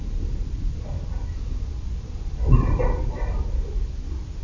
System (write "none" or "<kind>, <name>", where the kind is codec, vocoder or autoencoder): none